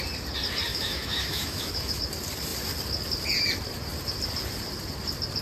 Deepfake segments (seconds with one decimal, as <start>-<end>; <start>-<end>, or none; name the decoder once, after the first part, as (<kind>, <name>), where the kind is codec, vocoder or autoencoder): 0.7-2.0 (autoencoder, DAC-VAE)